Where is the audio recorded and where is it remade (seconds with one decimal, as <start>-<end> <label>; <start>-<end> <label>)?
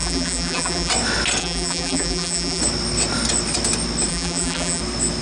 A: 0.0-0.9 remade; 0.9-1.4 recorded; 1.4-2.6 remade; 2.6-4.1 recorded; 4.1-4.8 remade; 4.8-5.2 recorded